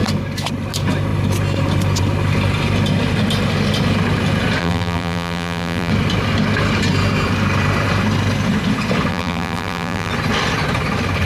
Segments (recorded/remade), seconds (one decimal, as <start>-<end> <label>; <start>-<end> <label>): 0.0-4.6 recorded; 4.6-5.9 remade; 5.9-9.1 recorded; 9.1-10.1 remade; 10.1-11.3 recorded

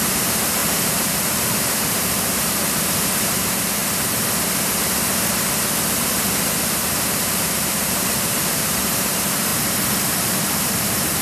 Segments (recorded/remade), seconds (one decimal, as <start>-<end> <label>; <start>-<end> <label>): 0.0-3.8 remade; 3.8-6.7 recorded; 6.7-9.5 remade; 9.5-10.0 recorded; 10.0-11.2 remade

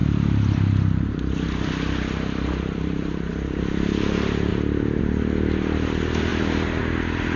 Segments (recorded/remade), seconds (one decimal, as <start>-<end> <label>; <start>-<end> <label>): 0.0-3.3 remade; 3.3-4.5 recorded; 4.5-5.0 remade; 5.0-7.4 recorded